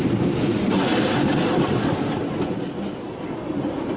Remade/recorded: recorded